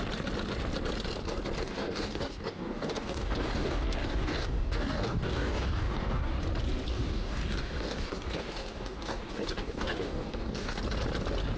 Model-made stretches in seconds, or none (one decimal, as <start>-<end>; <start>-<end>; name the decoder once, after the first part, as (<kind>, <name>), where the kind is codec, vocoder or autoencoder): 1.6-6.4 (codec, DAC); 6.9-10.8